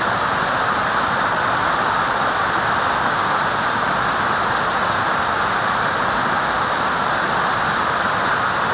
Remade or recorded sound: recorded